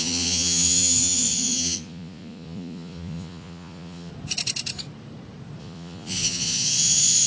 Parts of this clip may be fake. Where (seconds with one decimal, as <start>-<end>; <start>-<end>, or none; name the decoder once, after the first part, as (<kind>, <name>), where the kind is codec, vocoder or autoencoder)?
0.0-4.1 (vocoder, Vocos); 5.6-7.3